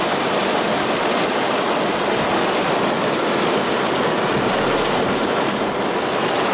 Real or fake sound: real